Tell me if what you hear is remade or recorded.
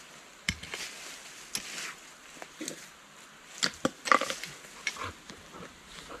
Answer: recorded